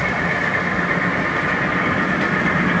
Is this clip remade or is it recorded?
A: recorded